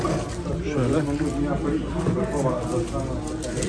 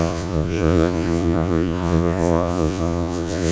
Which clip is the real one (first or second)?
first